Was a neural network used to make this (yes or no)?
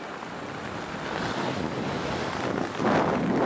no